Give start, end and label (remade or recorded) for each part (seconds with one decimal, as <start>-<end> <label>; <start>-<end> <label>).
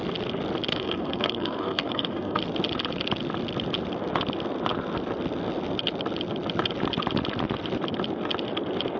0.0-0.7 recorded; 0.7-2.4 remade; 2.4-9.0 recorded